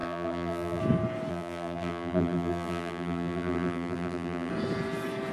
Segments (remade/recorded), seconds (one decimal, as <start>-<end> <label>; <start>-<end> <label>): 0.0-0.8 remade; 0.8-1.3 recorded; 1.3-4.5 remade; 4.5-5.3 recorded